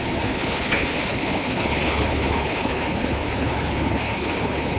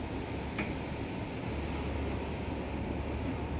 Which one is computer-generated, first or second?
first